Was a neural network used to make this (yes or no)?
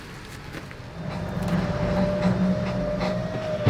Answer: no